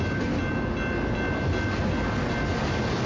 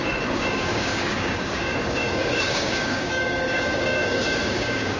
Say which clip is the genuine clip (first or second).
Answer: first